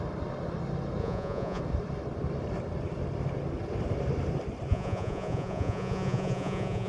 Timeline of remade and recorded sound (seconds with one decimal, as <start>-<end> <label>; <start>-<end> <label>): 0.0-1.0 recorded; 1.0-1.6 remade; 1.6-4.7 recorded; 4.7-6.9 remade